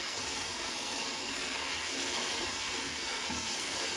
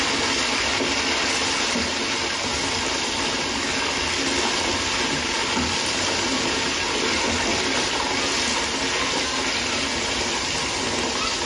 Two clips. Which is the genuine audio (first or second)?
second